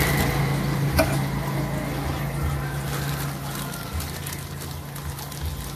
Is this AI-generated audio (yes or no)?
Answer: no